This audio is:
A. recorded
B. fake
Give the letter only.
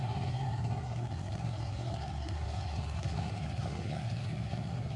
B